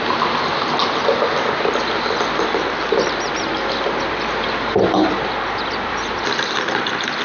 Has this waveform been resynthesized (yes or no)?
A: no